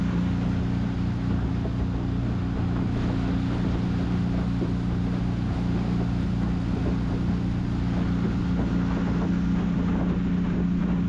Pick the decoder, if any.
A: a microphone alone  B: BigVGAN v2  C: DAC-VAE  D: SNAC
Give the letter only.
A